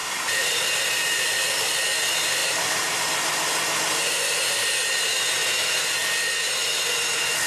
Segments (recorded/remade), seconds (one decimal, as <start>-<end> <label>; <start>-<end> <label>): 0.0-1.8 remade; 1.8-2.4 recorded; 2.4-3.0 remade; 3.0-7.5 recorded